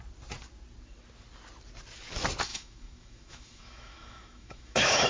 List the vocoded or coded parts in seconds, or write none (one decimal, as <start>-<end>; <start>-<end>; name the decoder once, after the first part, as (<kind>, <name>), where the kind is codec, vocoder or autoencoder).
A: 2.5-5.1 (autoencoder, DAC-VAE)